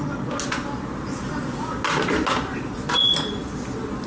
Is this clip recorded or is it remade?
recorded